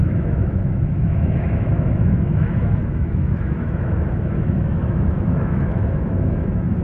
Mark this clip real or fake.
fake